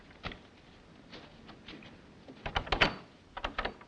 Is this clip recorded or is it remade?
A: recorded